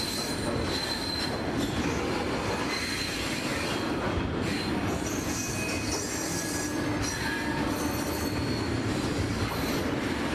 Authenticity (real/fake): real